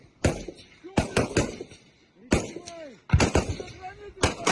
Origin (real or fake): real